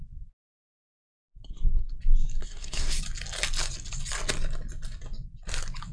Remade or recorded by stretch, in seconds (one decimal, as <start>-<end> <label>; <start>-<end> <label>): 0.0-1.2 recorded; 1.2-2.0 remade; 2.0-2.4 recorded; 2.4-3.0 remade; 3.0-5.9 recorded